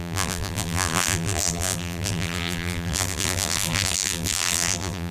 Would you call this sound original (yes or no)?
no